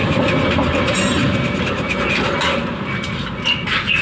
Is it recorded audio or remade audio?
recorded